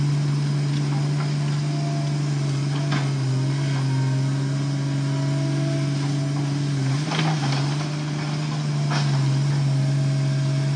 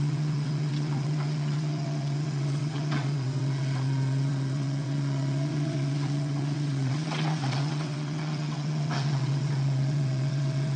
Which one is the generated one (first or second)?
second